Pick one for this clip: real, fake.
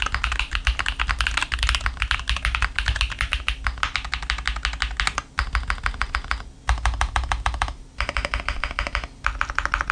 real